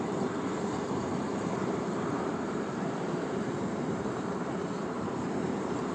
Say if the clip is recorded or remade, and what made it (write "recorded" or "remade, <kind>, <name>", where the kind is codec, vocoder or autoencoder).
remade, vocoder, BigVGAN v2